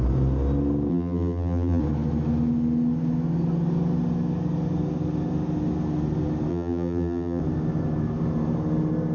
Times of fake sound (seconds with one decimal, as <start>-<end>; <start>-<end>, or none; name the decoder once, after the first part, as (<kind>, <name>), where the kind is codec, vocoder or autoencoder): 0.9-1.8 (vocoder, BigVGAN v2); 6.5-7.4